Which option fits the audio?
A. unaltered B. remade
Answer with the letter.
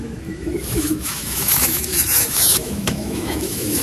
B